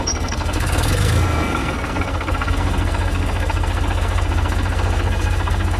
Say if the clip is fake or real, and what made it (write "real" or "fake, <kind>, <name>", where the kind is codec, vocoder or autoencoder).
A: fake, codec, SNAC